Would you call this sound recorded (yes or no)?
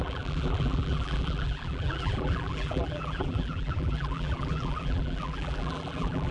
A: no